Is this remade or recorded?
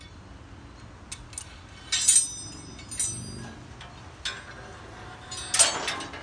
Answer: recorded